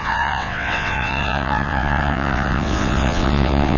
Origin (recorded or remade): remade